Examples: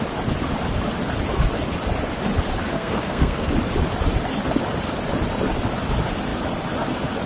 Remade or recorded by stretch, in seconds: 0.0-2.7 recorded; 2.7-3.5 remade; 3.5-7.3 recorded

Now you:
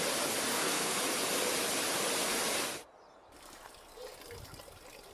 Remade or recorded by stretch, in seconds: 0.0-0.5 recorded; 0.5-1.0 remade; 1.0-5.1 recorded

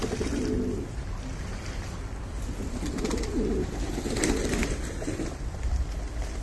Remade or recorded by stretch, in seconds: 0.0-6.4 recorded

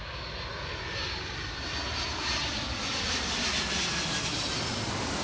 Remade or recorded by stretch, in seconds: 0.0-5.2 recorded